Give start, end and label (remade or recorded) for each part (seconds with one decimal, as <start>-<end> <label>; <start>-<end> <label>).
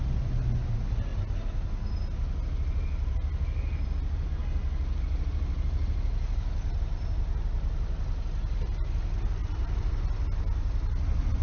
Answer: 0.0-11.4 recorded